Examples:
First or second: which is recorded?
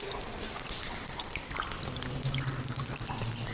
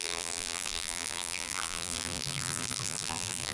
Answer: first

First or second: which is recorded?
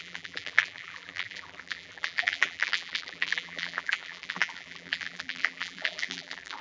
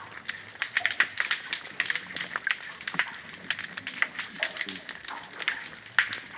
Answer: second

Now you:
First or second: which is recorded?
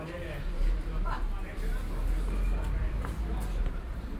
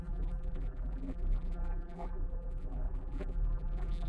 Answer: first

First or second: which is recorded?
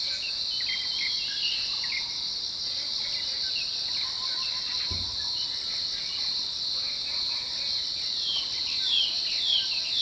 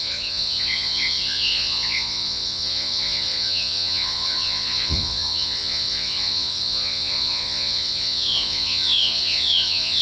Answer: first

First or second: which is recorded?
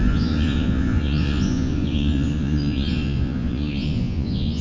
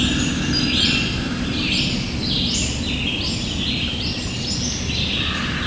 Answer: second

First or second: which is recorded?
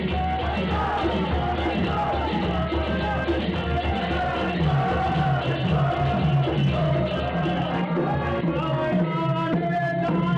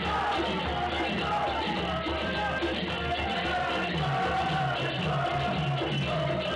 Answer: first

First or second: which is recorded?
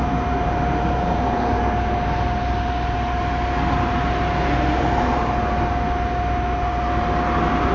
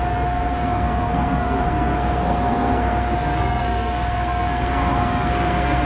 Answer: first